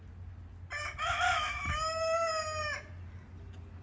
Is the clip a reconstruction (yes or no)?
no